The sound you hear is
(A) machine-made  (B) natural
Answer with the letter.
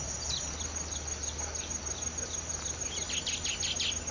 B